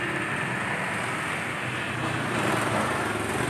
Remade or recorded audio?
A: recorded